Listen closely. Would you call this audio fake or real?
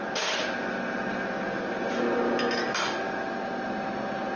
real